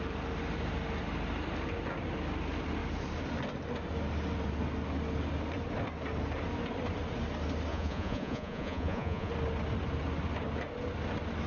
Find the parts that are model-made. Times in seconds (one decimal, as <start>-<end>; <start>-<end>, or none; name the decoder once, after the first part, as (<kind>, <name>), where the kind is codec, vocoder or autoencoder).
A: 7.7-9.3 (vocoder, Vocos)